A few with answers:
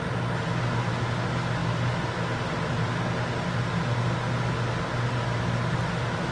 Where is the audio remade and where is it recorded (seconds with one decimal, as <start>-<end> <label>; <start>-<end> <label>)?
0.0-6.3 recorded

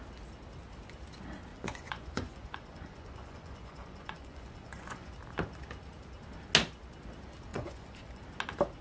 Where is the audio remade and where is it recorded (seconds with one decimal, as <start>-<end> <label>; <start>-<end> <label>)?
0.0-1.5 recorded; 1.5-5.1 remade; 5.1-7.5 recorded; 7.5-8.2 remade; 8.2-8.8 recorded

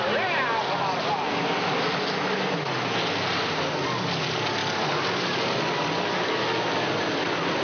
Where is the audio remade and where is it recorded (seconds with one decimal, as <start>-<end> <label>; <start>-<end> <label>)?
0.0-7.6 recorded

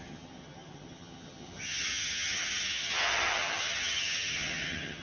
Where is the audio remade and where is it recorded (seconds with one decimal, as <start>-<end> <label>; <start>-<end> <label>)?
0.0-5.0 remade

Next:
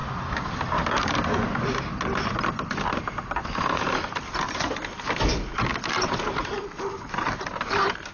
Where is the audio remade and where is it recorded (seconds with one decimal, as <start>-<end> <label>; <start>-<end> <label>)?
0.0-8.1 recorded